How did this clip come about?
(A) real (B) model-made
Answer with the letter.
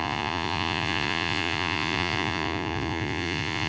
B